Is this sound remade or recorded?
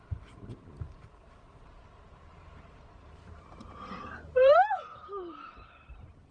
remade